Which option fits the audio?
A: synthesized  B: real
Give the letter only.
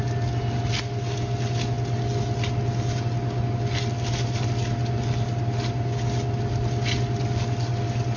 B